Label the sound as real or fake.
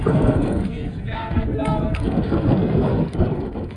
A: fake